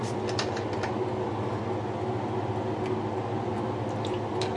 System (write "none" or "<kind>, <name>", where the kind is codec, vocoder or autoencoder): none